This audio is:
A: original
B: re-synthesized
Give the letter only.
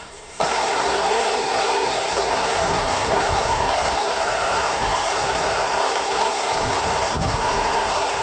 B